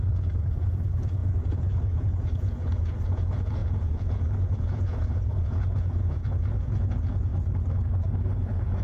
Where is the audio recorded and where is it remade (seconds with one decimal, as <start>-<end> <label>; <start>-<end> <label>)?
0.0-7.3 remade; 7.3-8.3 recorded; 8.3-8.8 remade